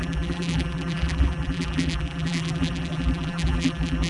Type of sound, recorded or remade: remade